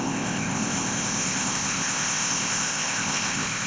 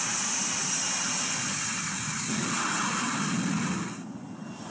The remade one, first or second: first